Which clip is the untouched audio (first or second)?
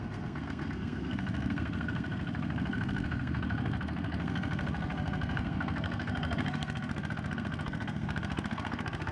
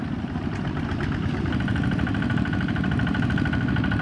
second